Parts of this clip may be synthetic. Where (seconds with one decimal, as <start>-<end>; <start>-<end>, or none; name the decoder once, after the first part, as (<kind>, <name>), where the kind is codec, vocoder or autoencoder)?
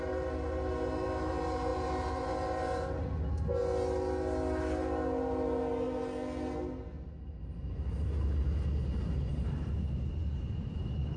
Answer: none